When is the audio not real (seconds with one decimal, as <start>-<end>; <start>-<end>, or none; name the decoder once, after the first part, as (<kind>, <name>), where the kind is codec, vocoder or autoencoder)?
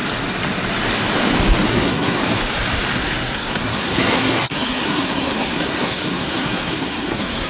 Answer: 1.7-2.2 (codec, SNAC); 3.0-7.5